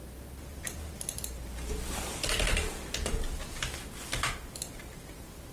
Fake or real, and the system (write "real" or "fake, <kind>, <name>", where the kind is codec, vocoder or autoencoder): real